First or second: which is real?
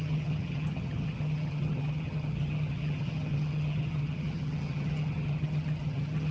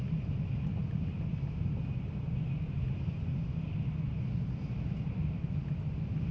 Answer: second